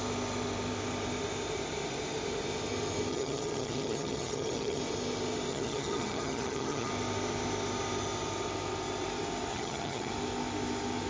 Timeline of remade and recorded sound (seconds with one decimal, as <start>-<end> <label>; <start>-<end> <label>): 0.0-3.1 recorded; 3.1-4.8 remade; 4.8-5.5 recorded; 5.5-6.9 remade; 6.9-9.5 recorded; 9.5-10.1 remade; 10.1-11.1 recorded